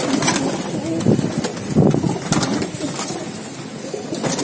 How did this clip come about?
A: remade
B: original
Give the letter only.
B